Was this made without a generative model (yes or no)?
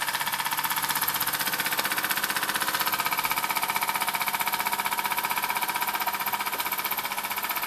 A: yes